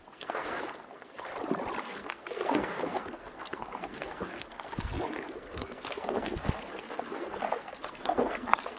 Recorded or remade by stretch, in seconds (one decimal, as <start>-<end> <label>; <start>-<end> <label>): 0.0-1.3 remade; 1.3-1.8 recorded; 1.8-8.8 remade